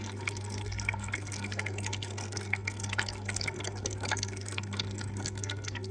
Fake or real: fake